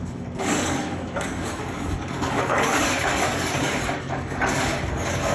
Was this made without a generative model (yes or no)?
no